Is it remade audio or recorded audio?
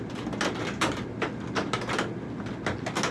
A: recorded